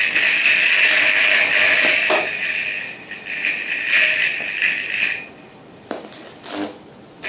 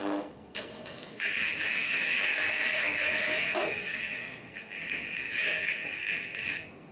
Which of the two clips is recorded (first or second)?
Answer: first